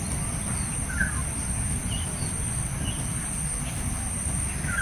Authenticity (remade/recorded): recorded